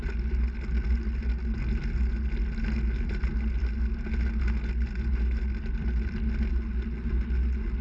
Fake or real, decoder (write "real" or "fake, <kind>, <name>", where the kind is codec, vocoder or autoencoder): real